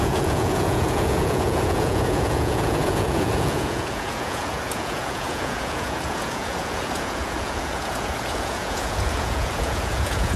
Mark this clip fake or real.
fake